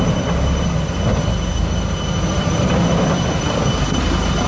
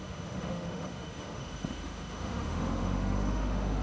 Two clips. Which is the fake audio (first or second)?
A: second